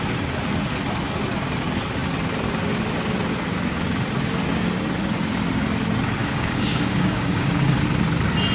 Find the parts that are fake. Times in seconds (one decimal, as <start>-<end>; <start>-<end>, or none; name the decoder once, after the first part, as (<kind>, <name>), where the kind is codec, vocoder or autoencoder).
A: 6.2-7.8 (codec, DAC)